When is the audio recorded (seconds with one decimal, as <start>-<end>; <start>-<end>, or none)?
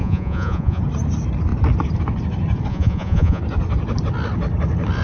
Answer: 0.8-2.7; 3.4-5.0